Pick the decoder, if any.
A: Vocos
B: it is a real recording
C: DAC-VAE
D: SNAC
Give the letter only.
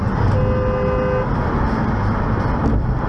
B